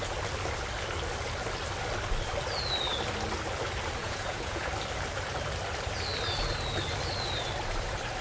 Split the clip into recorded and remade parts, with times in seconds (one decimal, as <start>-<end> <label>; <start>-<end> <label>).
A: 0.0-4.0 recorded; 4.0-4.7 remade; 4.7-8.2 recorded